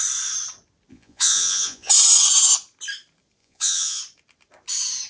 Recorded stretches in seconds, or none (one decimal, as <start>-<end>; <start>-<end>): 0.0-0.9; 1.9-3.4; 4.0-5.1